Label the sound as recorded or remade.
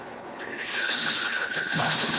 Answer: remade